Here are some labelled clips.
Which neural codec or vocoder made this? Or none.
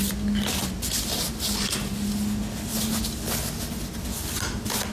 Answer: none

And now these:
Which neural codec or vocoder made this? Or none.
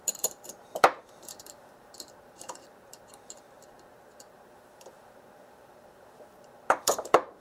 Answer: vocoder, BigVGAN v2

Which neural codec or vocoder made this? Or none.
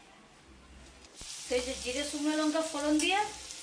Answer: none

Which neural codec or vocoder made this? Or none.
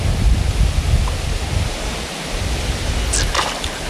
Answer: none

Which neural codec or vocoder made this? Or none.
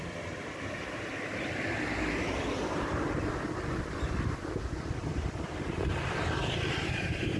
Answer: vocoder, BigVGAN v2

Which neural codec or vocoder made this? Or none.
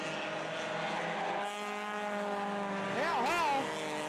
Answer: none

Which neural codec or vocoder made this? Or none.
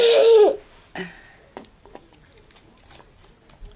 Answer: none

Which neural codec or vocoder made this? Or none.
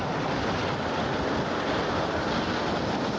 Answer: none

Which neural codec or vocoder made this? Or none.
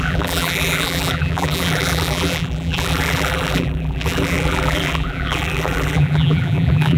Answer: vocoder, BigVGAN v2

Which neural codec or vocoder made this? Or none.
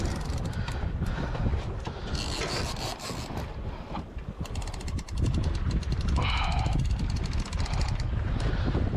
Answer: none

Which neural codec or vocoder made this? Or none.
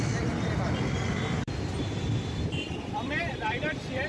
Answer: vocoder, BigVGAN v2